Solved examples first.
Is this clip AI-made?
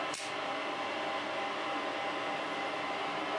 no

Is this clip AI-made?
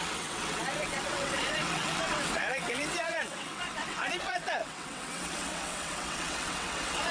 yes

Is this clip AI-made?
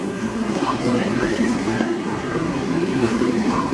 yes